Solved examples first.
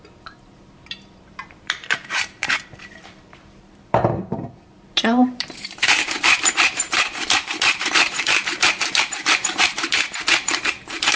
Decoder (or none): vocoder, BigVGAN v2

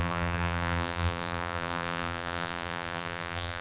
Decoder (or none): vocoder, BigVGAN v2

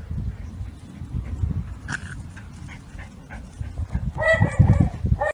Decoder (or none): none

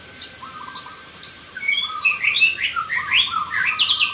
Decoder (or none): vocoder, BigVGAN v2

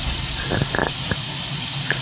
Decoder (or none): vocoder, BigVGAN v2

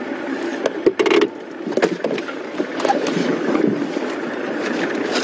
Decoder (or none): vocoder, BigVGAN v2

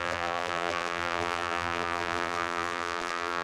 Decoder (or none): vocoder, BigVGAN v2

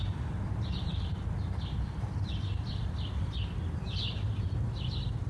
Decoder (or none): vocoder, BigVGAN v2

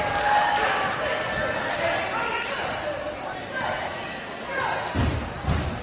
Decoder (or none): none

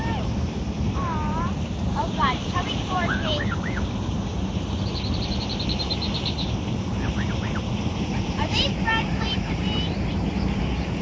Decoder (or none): vocoder, BigVGAN v2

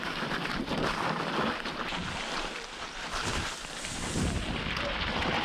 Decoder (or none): vocoder, BigVGAN v2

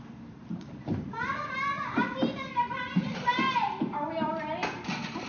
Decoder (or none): vocoder, BigVGAN v2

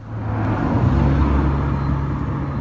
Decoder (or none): none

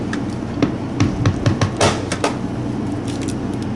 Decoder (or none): none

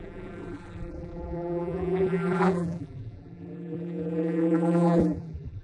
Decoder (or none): vocoder, BigVGAN v2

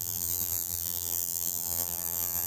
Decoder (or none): vocoder, BigVGAN v2